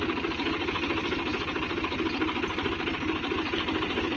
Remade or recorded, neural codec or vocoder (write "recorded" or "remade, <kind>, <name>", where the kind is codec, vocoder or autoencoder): recorded